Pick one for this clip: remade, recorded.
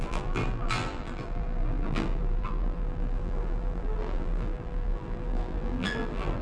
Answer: remade